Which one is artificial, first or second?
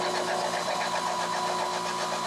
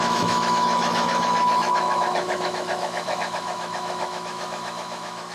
second